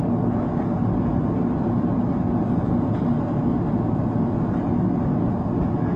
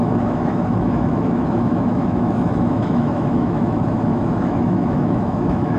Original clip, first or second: first